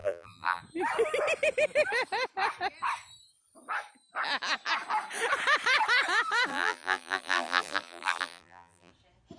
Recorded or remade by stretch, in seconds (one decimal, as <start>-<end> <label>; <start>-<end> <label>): 0.0-0.6 remade; 0.6-6.5 recorded; 6.5-8.9 remade; 8.9-9.4 recorded